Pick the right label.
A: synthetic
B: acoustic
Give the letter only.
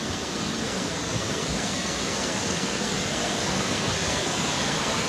A